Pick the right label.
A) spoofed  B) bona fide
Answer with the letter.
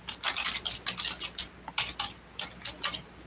B